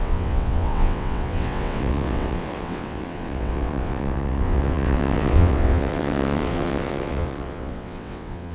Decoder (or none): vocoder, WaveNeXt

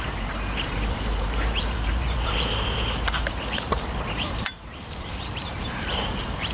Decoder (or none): vocoder, BigVGAN v2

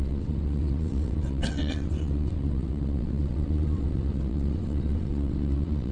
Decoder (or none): vocoder, WaveNeXt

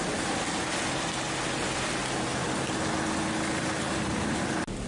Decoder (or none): none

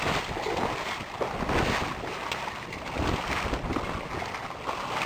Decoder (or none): none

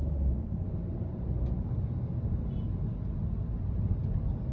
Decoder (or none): none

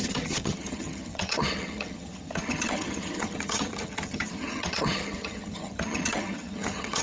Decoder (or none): vocoder, HiFi-GAN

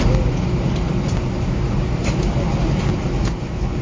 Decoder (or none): none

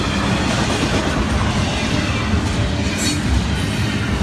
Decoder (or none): none